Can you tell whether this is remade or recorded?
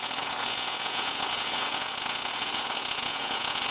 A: remade